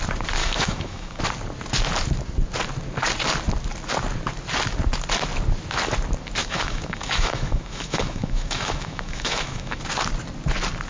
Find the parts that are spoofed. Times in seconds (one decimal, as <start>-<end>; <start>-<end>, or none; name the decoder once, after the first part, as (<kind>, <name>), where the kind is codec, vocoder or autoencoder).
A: 0.4-1.2 (autoencoder, DAC-VAE); 6.4-9.8